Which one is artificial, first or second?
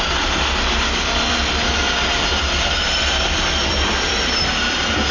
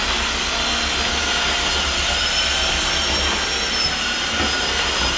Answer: first